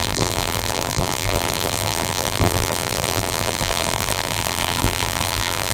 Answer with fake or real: fake